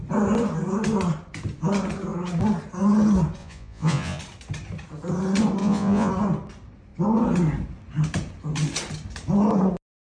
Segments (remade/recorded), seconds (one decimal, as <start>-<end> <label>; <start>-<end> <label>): 0.0-3.4 recorded; 3.4-4.2 remade; 4.2-5.6 recorded; 5.6-6.1 remade; 6.1-10.0 recorded